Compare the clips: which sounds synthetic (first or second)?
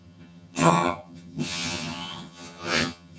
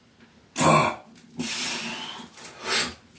first